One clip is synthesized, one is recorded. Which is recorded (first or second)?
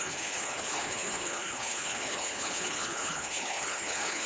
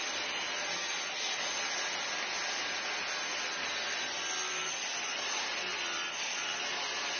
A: second